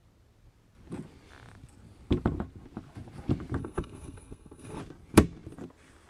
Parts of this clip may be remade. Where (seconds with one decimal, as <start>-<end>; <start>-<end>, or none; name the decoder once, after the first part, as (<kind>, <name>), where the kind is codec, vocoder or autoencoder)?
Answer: 3.6-4.8 (codec, SNAC)